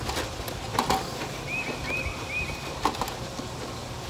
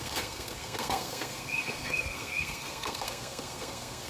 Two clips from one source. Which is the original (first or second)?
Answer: first